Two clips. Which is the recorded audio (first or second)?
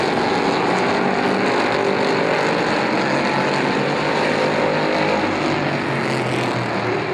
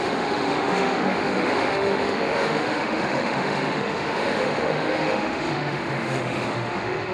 first